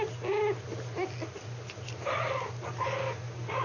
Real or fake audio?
real